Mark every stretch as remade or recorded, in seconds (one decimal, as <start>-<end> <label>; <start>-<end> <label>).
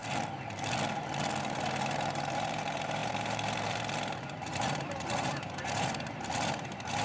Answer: 0.0-1.4 recorded; 1.4-7.0 remade